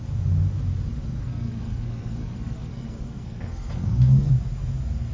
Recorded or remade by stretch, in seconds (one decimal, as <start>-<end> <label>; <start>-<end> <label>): 0.0-1.2 recorded; 1.2-4.3 remade; 4.3-5.1 recorded